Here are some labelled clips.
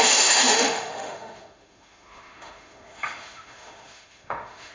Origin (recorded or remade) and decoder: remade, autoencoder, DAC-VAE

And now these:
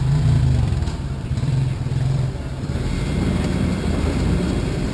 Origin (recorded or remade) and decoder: remade, vocoder, BigVGAN v2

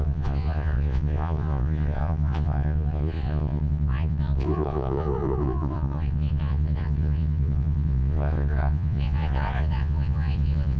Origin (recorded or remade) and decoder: remade, vocoder, Vocos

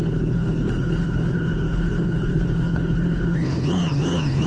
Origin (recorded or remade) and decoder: remade, codec, HILCodec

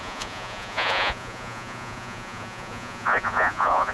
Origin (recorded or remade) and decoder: remade, vocoder, Vocos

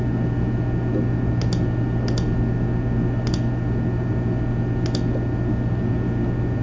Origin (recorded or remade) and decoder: recorded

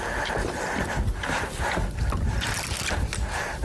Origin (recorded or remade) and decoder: recorded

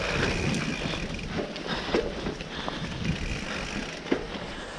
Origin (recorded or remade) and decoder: recorded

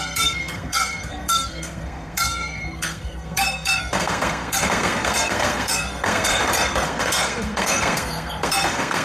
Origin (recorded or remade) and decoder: remade, codec, SNAC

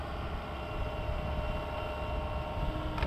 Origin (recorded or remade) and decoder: recorded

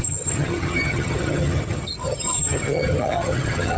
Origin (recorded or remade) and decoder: remade, vocoder, HiFi-GAN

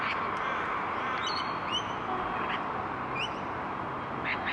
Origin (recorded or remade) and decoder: recorded